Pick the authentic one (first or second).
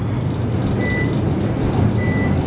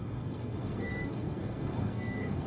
first